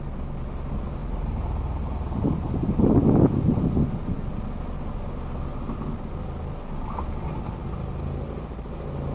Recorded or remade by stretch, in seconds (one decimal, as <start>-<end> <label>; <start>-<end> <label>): 0.0-9.1 recorded